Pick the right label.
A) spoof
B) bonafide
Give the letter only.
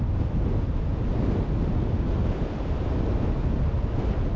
B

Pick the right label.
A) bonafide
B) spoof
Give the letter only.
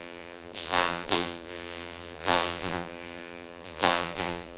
B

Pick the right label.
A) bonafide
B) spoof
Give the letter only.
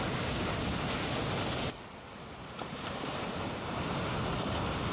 A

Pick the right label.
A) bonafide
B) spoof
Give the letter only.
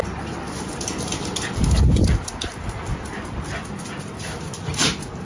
B